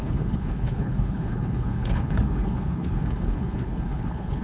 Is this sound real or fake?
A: fake